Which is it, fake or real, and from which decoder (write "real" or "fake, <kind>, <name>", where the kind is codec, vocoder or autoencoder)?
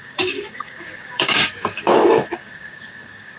fake, codec, DAC